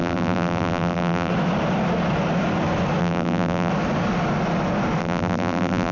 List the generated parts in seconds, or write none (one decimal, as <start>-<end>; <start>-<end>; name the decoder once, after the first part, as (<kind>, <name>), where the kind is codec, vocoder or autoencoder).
0.0-1.3 (vocoder, BigVGAN v2); 3.0-3.7; 5.0-5.9